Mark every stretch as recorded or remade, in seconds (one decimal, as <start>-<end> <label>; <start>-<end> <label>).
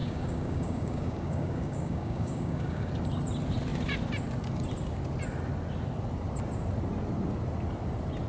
0.0-2.9 remade; 2.9-8.3 recorded